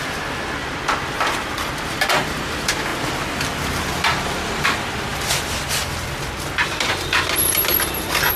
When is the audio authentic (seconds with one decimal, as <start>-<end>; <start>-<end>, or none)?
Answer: 0.0-8.4